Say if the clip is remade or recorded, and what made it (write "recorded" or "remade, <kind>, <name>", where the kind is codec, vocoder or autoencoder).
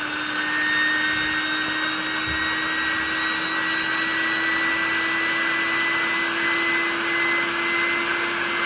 recorded